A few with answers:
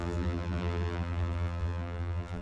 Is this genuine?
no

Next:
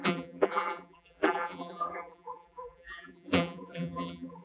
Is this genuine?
no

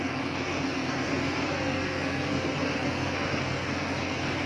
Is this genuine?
no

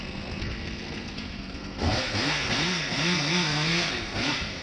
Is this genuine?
no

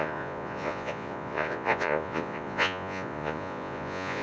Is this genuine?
no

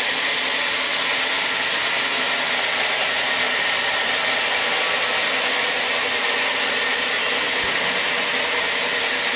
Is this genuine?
yes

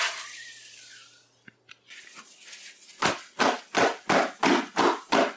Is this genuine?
yes